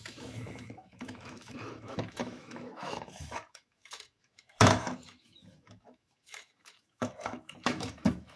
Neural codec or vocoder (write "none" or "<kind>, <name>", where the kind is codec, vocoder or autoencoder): autoencoder, DAC-VAE